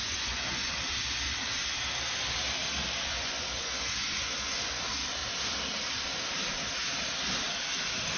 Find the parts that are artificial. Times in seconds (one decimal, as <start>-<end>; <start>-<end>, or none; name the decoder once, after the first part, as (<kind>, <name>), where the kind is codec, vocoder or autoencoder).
0.0-0.7 (vocoder, Vocos); 3.1-4.8